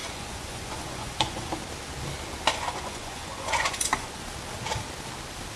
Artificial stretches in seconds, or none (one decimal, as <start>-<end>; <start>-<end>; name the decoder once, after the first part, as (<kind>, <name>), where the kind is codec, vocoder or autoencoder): 0.0-1.5 (vocoder, Vocos); 2.5-4.2